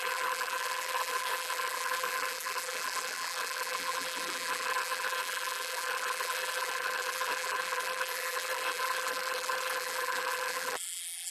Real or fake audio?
fake